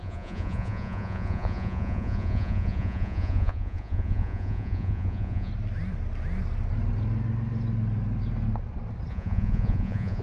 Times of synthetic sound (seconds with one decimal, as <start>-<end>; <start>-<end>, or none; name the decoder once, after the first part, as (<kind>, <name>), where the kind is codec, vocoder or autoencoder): 0.0-5.5 (vocoder, Vocos); 9.1-10.2